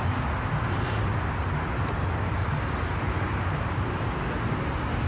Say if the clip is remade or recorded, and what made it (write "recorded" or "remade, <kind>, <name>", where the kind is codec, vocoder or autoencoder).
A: recorded